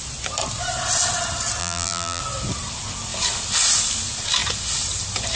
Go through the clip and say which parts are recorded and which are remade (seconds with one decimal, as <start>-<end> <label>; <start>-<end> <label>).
0.0-1.6 recorded; 1.6-2.2 remade; 2.2-5.4 recorded